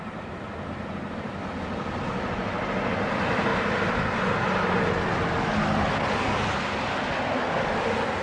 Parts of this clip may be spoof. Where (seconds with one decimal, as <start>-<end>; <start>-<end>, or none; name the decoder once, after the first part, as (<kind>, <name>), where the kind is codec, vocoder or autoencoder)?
none